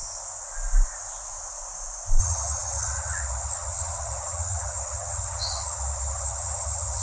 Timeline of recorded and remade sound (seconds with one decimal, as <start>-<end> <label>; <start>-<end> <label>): 0.0-2.2 recorded; 2.2-7.0 remade